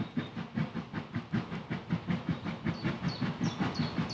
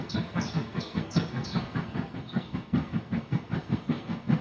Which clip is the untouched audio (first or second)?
first